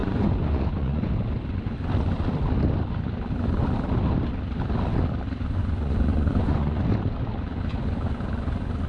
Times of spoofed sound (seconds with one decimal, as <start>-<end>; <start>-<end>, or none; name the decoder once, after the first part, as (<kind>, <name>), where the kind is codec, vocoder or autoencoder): 0.0-1.1 (vocoder, Vocos); 5.6-6.8